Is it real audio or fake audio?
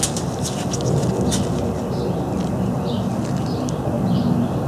real